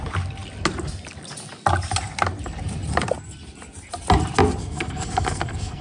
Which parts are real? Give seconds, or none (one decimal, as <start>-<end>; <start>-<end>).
0.0-4.6